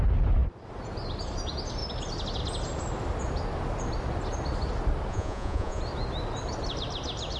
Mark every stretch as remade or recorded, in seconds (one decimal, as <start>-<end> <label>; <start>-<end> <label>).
0.0-5.1 recorded; 5.1-5.8 remade; 5.8-7.4 recorded